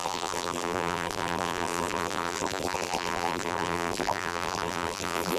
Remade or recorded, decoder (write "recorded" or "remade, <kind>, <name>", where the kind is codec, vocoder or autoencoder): remade, vocoder, BigVGAN v2